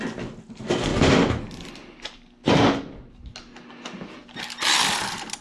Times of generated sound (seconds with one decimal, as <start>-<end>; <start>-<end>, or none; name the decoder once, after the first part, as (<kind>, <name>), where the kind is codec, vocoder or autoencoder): none